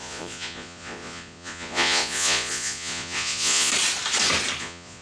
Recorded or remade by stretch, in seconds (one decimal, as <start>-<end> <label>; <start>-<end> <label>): 0.0-3.7 remade; 3.7-4.6 recorded; 4.6-5.0 remade